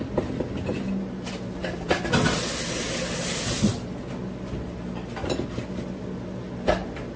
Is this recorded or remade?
recorded